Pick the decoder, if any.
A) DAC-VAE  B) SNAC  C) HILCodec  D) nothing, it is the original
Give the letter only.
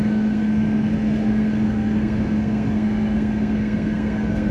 B